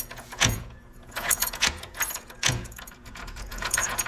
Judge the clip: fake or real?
fake